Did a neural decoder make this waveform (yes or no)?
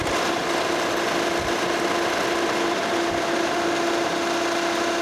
no